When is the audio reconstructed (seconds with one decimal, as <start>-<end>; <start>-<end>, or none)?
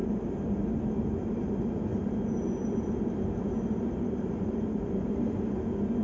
0.0-0.7; 1.9-5.5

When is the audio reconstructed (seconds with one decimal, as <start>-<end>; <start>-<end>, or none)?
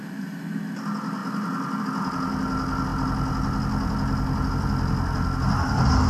none